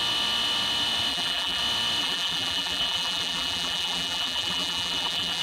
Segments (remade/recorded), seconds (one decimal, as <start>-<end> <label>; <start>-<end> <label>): 0.0-1.1 recorded; 1.1-1.6 remade; 1.6-2.0 recorded; 2.0-5.4 remade